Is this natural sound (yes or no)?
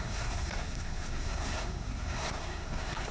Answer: no